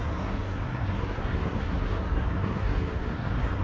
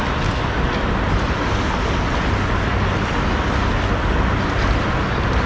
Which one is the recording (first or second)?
second